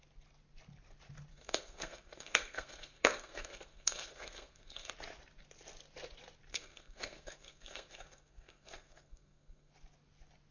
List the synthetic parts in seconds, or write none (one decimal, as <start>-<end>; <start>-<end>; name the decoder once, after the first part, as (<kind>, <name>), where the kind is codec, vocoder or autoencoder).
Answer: 1.3-4.9 (codec, SNAC); 6.5-9.7